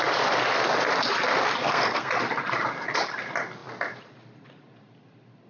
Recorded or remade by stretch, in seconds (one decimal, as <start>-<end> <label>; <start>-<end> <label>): 0.0-1.6 recorded; 1.6-2.1 remade; 2.1-5.5 recorded